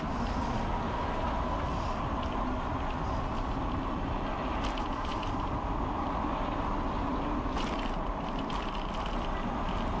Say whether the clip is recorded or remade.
recorded